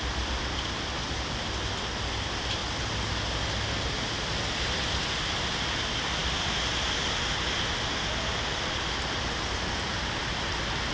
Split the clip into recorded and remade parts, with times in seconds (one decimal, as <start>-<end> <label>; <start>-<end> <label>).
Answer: 0.0-10.9 recorded